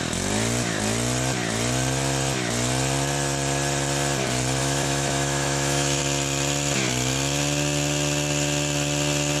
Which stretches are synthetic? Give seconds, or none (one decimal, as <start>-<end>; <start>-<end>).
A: 4.6-6.0